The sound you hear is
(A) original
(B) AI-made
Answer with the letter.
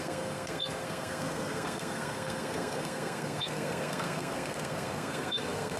B